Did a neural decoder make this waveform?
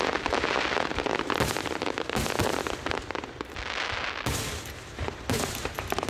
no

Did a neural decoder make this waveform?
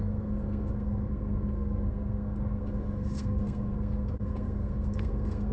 yes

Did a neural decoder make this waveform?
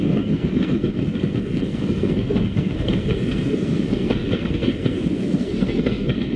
yes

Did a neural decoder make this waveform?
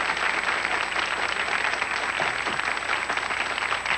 no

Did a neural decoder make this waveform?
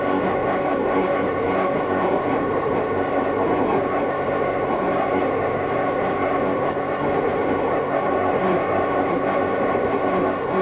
yes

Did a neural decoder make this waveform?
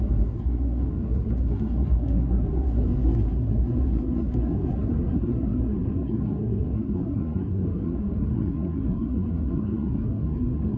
yes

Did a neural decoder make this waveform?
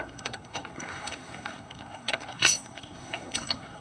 yes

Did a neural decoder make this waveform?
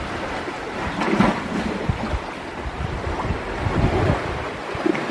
no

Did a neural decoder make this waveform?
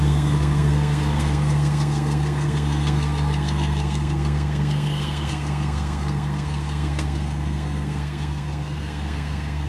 yes